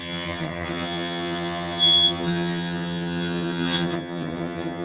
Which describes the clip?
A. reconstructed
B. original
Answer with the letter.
A